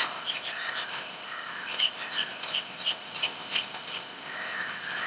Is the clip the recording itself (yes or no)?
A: no